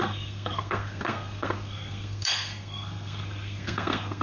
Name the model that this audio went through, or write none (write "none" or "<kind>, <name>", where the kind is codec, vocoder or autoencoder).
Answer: codec, SNAC